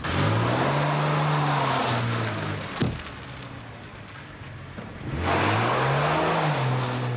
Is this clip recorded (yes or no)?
yes